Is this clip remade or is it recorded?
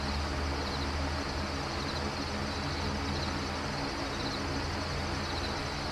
recorded